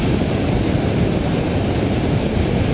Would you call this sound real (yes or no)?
yes